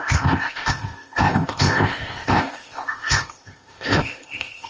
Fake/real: fake